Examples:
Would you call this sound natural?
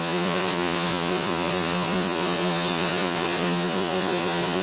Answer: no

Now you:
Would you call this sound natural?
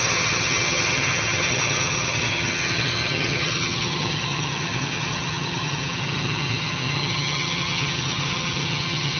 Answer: no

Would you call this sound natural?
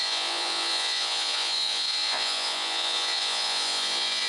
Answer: no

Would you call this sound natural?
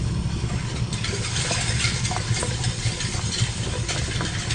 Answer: yes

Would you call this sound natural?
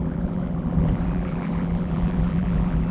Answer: no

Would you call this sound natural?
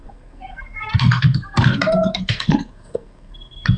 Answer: no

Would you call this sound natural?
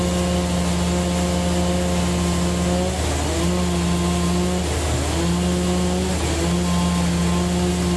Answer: yes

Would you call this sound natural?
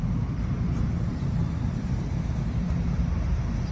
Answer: no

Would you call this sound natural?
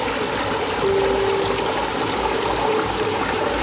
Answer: yes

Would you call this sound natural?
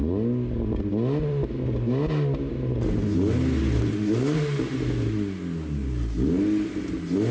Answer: yes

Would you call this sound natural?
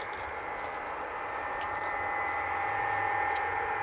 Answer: yes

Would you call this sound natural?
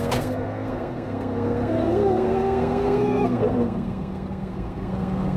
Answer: no